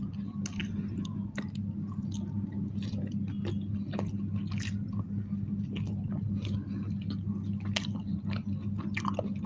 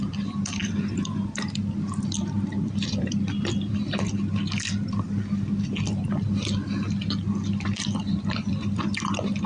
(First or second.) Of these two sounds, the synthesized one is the second